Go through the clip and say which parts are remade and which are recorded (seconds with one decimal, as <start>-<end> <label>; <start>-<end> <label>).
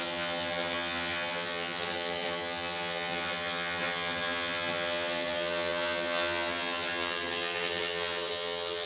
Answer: 0.0-8.9 remade